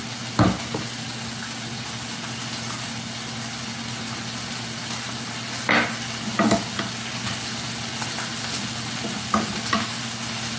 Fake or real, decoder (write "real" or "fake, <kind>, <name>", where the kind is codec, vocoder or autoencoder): real